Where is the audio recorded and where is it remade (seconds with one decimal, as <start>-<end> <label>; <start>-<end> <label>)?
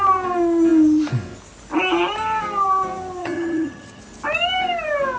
0.0-3.2 recorded; 3.2-4.0 remade; 4.0-5.2 recorded